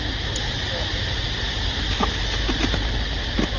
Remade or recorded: recorded